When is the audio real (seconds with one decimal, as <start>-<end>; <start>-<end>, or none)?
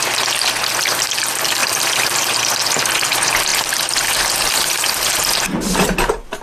0.0-6.4